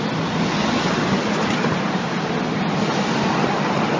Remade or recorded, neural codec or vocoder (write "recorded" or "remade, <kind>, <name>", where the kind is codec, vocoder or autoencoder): recorded